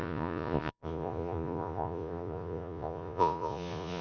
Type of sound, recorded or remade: remade